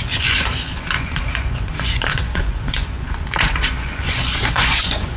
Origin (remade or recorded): remade